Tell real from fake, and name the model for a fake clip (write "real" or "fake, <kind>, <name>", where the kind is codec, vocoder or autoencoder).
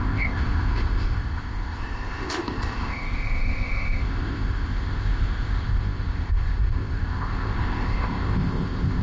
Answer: fake, codec, ZipCodec